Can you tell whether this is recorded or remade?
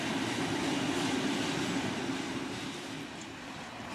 recorded